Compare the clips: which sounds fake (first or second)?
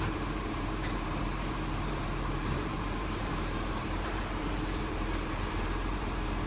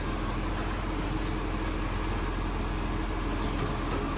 first